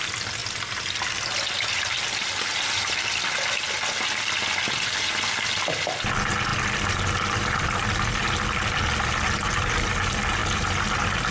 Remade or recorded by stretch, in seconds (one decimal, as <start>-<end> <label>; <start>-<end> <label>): 0.0-11.3 recorded